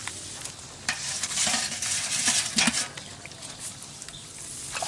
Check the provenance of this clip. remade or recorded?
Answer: recorded